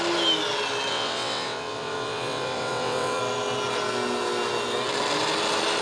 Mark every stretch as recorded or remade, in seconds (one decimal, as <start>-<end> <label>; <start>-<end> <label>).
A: 0.0-0.9 recorded; 0.9-3.2 remade; 3.2-5.8 recorded